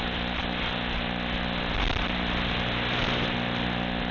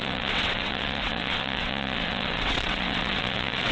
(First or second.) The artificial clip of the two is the second